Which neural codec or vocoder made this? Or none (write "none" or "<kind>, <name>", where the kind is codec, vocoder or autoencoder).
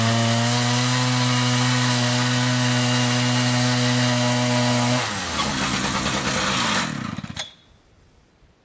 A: none